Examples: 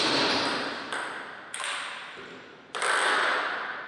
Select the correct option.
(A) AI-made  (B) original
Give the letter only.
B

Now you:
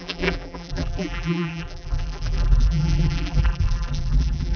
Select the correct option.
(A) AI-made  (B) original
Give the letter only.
A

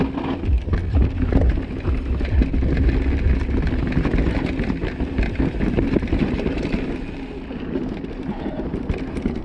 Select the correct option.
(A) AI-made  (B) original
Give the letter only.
B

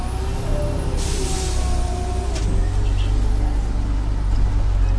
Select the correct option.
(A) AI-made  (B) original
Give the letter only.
B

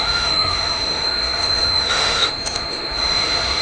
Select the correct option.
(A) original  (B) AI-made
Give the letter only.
B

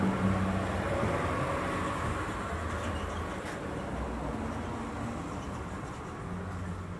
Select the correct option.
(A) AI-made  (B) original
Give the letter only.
B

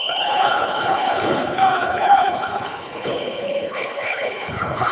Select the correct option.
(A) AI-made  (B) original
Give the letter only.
A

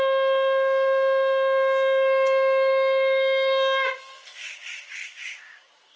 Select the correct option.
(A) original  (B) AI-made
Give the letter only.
B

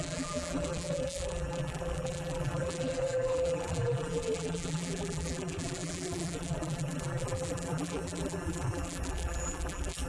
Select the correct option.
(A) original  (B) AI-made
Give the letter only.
B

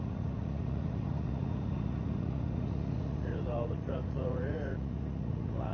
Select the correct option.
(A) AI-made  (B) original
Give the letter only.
A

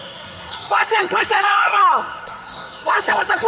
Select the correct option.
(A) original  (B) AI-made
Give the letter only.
B